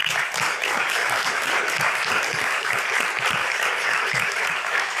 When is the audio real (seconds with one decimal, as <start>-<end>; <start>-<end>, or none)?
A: 2.9-3.4

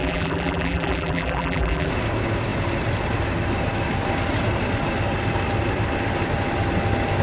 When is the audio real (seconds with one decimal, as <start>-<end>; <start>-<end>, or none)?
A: 1.9-7.2

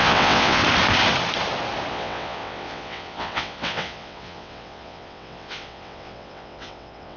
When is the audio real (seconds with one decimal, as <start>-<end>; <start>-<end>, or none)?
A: 0.6-1.9

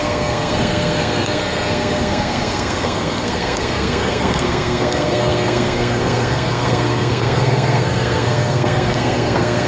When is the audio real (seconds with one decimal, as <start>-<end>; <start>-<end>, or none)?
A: none

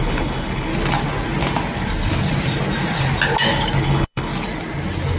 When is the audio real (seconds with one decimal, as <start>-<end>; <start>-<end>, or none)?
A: 0.7-3.8; 4.3-5.2

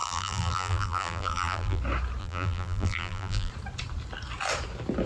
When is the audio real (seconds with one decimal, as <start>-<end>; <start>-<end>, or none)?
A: 1.8-2.2; 3.5-5.1

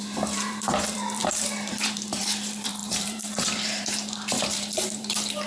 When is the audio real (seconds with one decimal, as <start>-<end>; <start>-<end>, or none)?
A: none

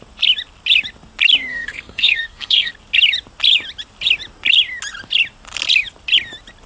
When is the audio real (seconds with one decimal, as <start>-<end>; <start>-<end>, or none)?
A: 0.0-1.5; 2.7-6.7